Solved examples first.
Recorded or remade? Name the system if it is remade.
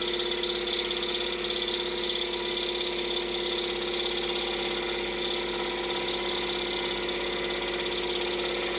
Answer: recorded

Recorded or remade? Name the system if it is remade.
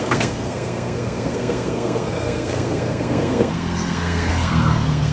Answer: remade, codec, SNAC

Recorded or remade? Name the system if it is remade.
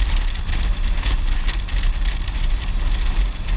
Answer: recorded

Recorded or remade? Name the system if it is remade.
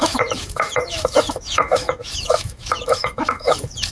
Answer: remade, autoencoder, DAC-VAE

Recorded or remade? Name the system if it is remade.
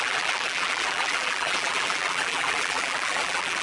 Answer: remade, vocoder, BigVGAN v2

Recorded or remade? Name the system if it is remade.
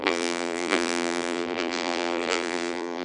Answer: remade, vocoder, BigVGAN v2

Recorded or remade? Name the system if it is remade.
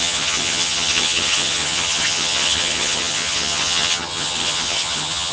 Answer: remade, vocoder, HiFi-GAN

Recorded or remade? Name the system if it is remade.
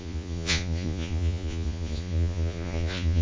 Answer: remade, vocoder, Vocos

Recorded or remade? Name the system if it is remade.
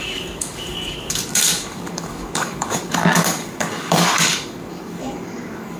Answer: remade, codec, DAC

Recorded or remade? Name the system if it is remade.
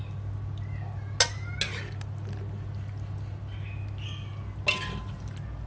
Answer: recorded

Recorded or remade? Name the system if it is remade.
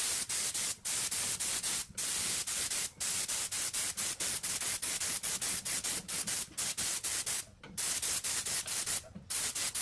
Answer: recorded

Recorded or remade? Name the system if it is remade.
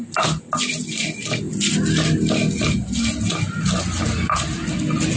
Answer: recorded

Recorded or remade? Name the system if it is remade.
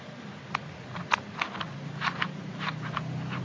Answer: recorded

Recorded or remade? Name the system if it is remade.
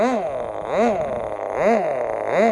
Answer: recorded